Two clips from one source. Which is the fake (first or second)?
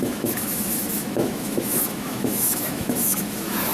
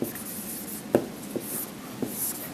first